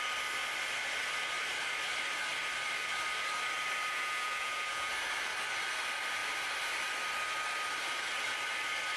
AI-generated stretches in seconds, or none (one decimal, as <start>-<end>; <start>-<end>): 3.9-4.9